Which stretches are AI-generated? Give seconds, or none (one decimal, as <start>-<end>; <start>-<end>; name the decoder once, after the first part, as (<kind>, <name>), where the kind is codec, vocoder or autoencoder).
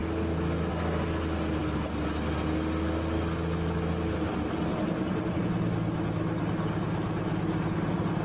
none